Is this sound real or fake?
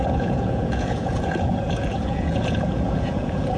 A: fake